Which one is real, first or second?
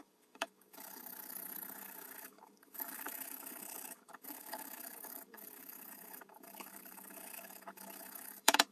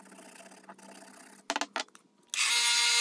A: second